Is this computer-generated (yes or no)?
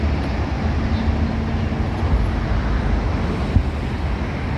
no